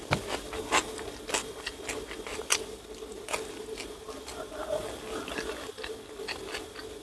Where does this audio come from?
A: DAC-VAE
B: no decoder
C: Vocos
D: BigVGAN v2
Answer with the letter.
B